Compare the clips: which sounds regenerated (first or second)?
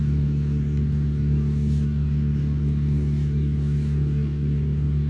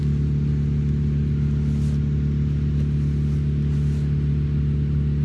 first